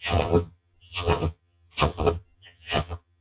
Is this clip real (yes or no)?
no